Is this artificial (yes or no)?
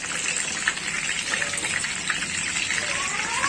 no